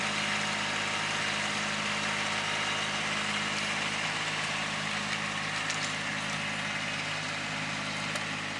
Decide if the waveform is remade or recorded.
recorded